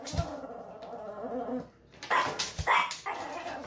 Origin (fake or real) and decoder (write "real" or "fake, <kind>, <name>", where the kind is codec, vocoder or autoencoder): real